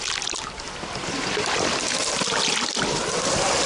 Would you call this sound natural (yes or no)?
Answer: yes